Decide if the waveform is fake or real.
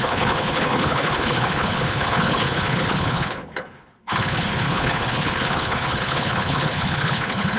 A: fake